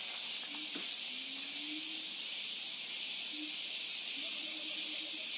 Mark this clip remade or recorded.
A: recorded